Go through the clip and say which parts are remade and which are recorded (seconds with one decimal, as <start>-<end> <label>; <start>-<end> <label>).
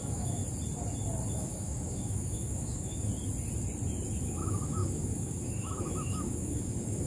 0.0-0.4 remade; 0.4-1.3 recorded; 1.3-3.1 remade; 3.1-4.2 recorded; 4.2-7.1 remade